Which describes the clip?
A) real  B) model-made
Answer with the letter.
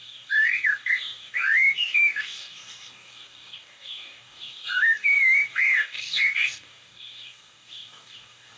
B